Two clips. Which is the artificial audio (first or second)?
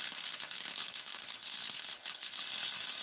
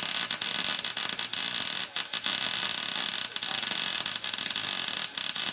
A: first